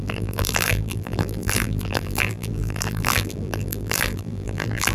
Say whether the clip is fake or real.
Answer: fake